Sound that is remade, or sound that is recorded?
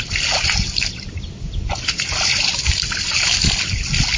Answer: recorded